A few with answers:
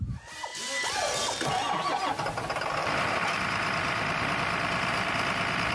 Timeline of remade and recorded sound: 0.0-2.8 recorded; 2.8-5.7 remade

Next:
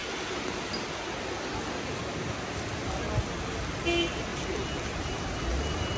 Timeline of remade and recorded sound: 0.0-6.0 recorded

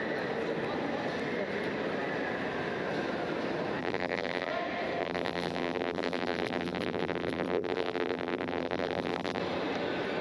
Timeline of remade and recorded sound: 0.0-3.8 recorded; 3.8-4.5 remade; 4.5-5.0 recorded; 5.0-9.4 remade; 9.4-10.2 recorded